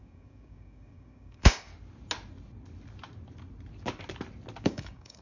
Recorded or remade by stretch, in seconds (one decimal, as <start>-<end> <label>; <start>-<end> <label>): 0.0-1.7 remade; 1.7-4.6 recorded; 4.6-5.2 remade